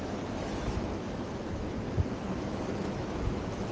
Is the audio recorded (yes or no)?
no